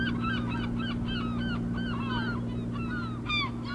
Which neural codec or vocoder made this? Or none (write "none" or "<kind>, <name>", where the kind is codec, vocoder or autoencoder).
none